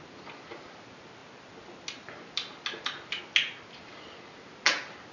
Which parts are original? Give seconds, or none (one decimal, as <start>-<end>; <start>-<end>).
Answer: 0.0-5.1

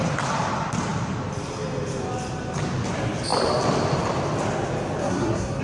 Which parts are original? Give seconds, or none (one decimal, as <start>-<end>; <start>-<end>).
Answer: 0.0-5.0

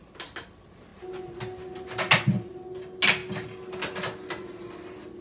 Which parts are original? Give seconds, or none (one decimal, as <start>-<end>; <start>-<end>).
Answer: 0.0-5.2

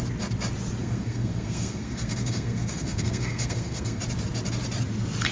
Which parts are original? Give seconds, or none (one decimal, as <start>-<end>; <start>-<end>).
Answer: 0.0-0.8; 4.0-5.3

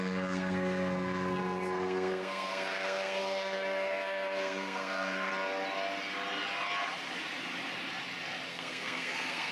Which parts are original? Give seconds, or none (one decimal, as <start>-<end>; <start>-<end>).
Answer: 5.3-8.5